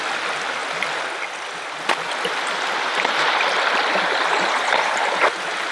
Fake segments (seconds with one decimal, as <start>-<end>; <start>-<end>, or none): none